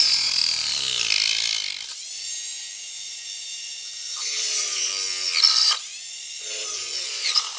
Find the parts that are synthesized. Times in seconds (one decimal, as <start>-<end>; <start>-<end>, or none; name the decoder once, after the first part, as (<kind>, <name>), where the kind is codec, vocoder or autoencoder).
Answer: 0.0-0.4 (vocoder, Vocos); 4.0-4.9; 6.1-7.6